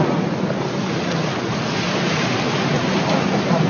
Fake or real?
real